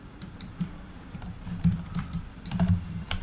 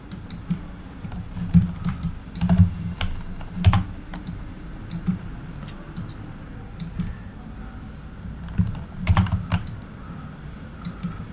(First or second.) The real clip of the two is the second